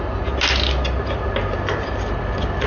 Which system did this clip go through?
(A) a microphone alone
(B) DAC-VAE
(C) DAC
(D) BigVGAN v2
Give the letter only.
A